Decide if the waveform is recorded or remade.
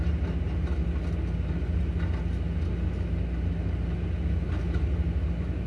recorded